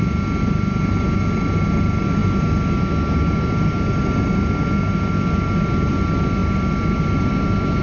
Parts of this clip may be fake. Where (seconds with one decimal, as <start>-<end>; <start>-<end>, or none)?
none